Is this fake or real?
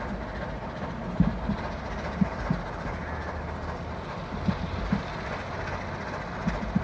real